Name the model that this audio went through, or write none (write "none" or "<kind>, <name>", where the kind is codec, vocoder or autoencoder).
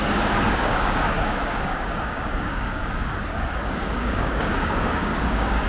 codec, DAC